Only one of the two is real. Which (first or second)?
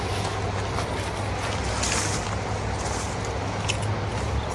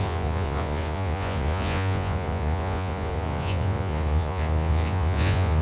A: first